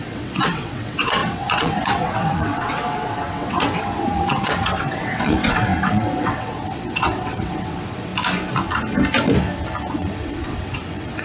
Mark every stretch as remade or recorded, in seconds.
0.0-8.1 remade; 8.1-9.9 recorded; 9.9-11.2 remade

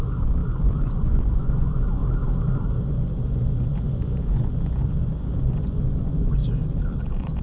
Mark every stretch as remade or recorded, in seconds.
0.0-2.0 remade; 2.0-2.8 recorded; 2.8-6.4 remade; 6.4-7.0 recorded; 7.0-7.4 remade